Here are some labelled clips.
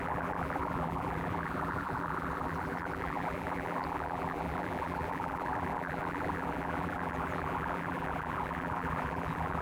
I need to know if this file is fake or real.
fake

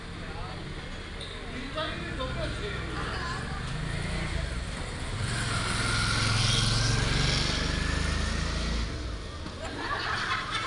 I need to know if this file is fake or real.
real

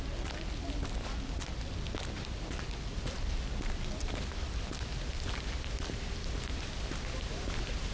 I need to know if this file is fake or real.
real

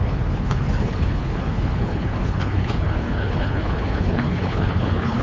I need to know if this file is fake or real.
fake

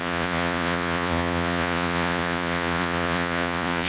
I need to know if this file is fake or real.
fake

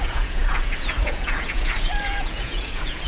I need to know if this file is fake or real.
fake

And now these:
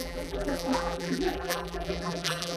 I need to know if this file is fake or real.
fake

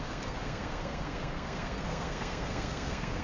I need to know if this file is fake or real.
fake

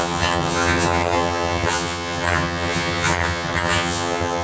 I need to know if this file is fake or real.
fake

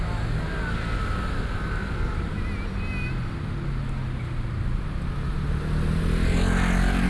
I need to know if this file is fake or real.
real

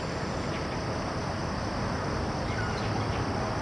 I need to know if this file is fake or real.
real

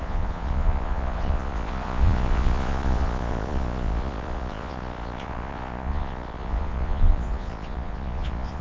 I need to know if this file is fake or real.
fake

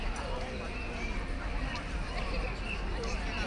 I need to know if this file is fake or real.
real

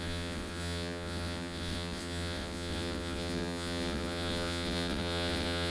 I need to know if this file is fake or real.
fake